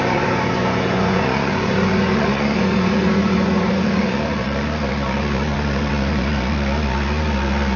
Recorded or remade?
remade